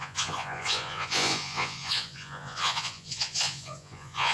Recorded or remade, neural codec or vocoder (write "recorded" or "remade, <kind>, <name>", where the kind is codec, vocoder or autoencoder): remade, vocoder, Vocos